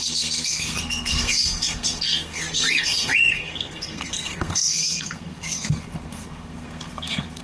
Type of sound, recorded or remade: remade